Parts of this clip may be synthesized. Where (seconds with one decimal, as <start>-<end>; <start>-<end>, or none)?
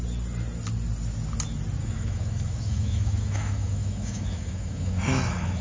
1.8-5.6